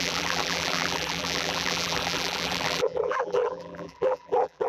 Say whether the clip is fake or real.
fake